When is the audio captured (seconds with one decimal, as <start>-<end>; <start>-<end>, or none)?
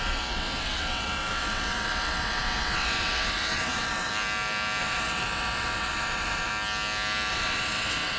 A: 4.1-4.8; 6.5-7.3